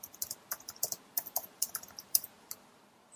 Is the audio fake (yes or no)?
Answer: yes